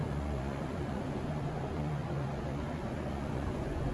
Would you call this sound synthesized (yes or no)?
yes